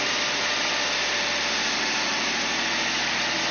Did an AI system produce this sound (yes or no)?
no